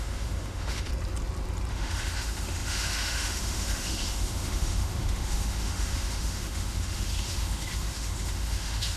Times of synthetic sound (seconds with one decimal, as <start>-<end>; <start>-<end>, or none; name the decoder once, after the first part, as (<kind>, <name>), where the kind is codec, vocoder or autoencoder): 0.0-0.9 (autoencoder, DAC-VAE); 1.7-9.0